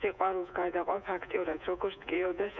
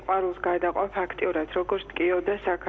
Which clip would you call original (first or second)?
second